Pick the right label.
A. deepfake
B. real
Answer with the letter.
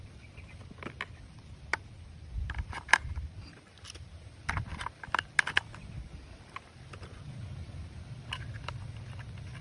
B